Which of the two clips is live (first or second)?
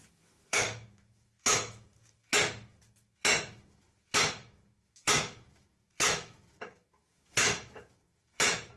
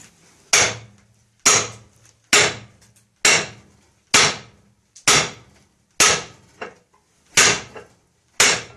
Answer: second